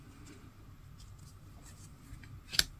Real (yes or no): yes